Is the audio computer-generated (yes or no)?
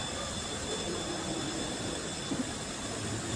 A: no